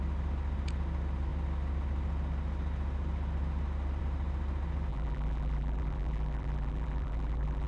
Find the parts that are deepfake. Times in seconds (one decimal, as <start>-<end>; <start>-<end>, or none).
4.9-7.7